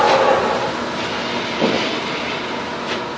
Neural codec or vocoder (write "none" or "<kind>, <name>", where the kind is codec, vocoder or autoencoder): none